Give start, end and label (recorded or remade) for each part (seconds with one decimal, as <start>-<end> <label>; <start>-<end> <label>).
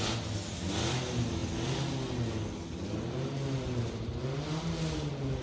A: 0.0-5.4 recorded